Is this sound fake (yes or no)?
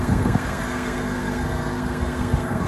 yes